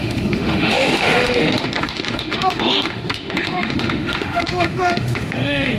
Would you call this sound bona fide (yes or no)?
no